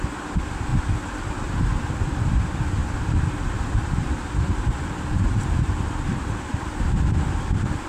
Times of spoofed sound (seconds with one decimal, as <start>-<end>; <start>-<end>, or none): 0.0-0.7; 1.9-7.9